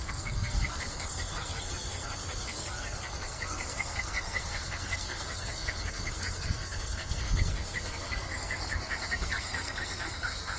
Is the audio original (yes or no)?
no